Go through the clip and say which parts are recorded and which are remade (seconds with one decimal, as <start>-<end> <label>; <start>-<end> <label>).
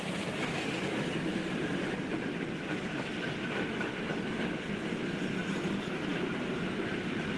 0.0-7.4 recorded